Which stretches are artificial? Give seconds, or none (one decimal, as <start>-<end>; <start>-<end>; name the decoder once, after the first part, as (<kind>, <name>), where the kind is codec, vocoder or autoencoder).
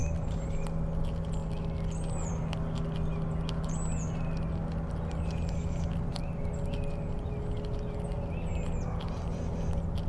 0.0-0.5 (vocoder, BigVGAN v2)